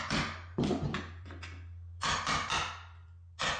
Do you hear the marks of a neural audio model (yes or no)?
no